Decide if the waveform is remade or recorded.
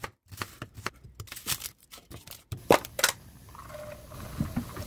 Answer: recorded